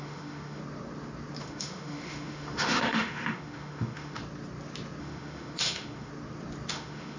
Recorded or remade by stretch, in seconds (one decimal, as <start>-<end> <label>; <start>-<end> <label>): 0.0-0.6 remade; 0.6-1.4 recorded; 1.4-4.2 remade; 4.2-5.0 recorded; 5.0-6.1 remade; 6.1-6.7 recorded; 6.7-7.2 remade